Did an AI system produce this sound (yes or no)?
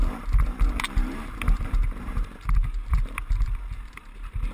yes